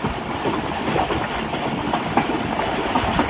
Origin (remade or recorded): recorded